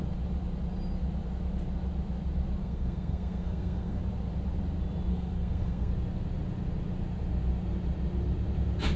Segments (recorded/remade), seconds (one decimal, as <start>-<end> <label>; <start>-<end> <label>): 0.0-2.6 recorded; 2.6-4.0 remade; 4.0-5.1 recorded; 5.1-5.9 remade; 5.9-9.0 recorded